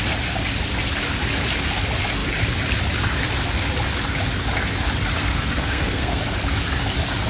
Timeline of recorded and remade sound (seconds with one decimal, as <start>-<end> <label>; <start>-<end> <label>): 0.0-5.2 recorded; 5.2-6.2 remade; 6.2-7.3 recorded